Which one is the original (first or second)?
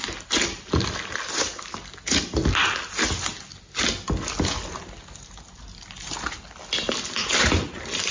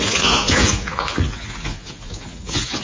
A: first